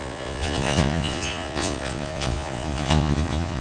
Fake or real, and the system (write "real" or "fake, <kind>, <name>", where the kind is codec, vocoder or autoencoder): fake, vocoder, Vocos